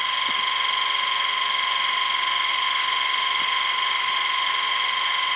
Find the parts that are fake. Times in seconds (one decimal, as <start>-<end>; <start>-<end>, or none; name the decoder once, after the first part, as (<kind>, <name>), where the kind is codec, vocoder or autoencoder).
2.5-4.5 (vocoder, BigVGAN v2)

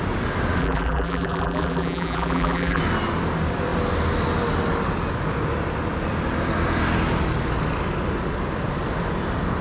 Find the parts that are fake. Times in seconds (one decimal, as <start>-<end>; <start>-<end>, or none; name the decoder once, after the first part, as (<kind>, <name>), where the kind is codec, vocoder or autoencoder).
0.6-2.8 (vocoder, BigVGAN v2)

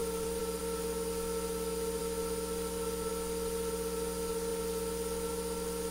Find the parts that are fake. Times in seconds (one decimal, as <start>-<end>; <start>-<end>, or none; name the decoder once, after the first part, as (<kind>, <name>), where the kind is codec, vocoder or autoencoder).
0.0-0.6 (vocoder, BigVGAN v2)

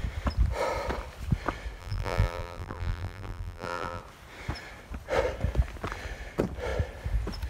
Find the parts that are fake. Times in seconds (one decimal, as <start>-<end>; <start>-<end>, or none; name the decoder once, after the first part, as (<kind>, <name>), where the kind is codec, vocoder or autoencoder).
1.8-4.0 (vocoder, BigVGAN v2)

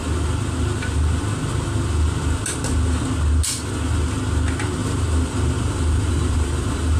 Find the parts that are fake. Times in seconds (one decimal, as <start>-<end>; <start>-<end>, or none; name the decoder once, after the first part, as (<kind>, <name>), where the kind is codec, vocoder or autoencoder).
4.8-7.0 (vocoder, BigVGAN v2)

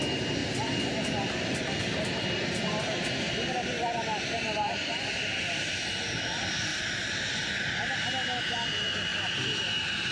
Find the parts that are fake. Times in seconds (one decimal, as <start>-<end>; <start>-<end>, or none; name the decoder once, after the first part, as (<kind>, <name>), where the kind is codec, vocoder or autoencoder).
none